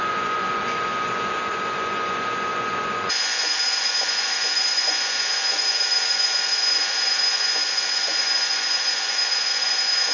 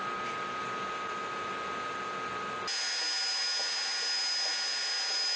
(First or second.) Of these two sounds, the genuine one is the second